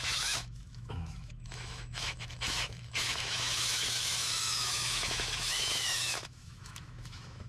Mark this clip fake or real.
fake